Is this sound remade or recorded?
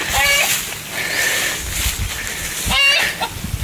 recorded